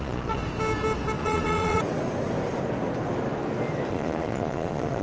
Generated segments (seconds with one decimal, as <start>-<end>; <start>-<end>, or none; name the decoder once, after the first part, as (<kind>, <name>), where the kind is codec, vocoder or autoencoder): 0.0-0.4 (vocoder, Vocos); 1.2-1.8; 3.9-5.0